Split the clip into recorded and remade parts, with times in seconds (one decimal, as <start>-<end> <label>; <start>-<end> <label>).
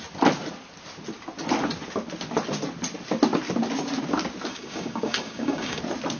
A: 0.0-4.5 recorded; 4.5-5.8 remade; 5.8-6.2 recorded